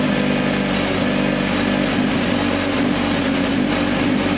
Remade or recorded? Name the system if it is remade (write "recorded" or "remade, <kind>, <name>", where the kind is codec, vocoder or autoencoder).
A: recorded